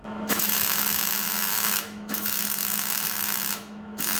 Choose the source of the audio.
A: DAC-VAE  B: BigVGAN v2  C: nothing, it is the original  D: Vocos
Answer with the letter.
A